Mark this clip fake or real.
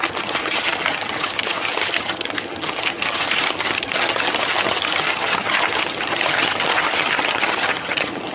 fake